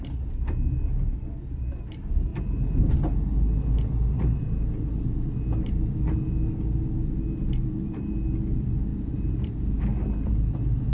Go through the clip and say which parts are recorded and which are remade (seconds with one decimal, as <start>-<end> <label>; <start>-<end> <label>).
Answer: 0.0-2.3 recorded; 2.3-2.9 remade; 2.9-8.9 recorded; 8.9-9.5 remade; 9.5-10.9 recorded